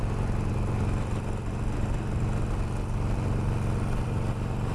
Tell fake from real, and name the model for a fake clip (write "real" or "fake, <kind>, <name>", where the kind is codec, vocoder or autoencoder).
real